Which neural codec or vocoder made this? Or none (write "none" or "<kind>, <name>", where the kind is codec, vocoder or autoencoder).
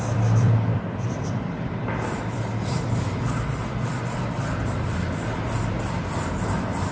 vocoder, BigVGAN v2